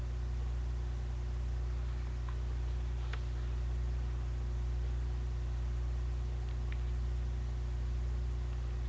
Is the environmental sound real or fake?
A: real